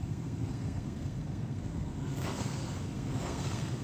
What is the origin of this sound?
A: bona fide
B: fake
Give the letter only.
B